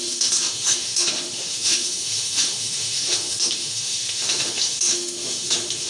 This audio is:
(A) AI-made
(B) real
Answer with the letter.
A